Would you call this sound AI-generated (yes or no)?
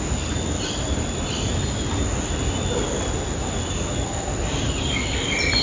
no